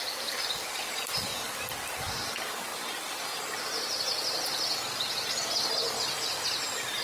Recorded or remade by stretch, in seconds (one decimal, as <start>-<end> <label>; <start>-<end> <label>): 0.0-1.3 remade; 1.3-2.2 recorded; 2.2-7.0 remade